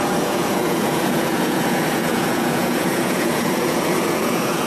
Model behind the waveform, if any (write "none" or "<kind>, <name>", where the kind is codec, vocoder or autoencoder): vocoder, Vocos